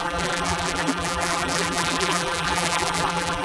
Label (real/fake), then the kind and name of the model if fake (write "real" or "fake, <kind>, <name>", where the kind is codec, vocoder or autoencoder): fake, vocoder, BigVGAN v2